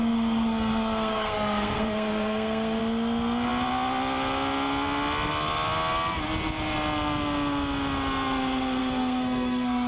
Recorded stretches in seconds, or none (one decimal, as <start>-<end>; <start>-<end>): 2.8-8.8